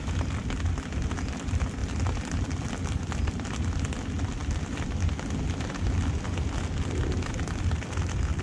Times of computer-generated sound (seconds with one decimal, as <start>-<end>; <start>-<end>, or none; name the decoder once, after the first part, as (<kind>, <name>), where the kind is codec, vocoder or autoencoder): none